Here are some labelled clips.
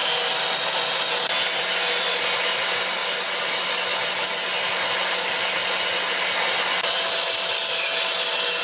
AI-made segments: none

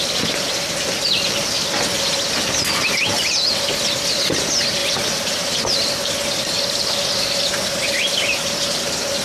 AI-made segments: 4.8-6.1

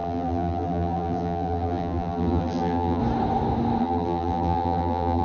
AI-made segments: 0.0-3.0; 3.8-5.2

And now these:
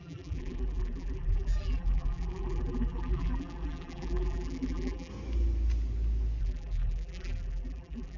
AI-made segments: 0.0-5.1; 6.4-8.2

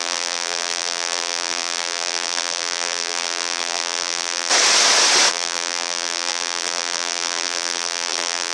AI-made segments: 0.0-4.5; 5.3-8.5